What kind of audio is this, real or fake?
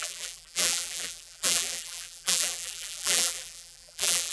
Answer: fake